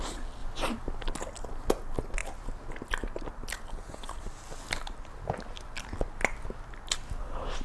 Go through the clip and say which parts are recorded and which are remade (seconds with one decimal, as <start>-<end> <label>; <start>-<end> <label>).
0.0-7.6 recorded